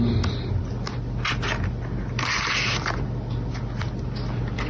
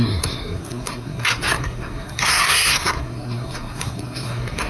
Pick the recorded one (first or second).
first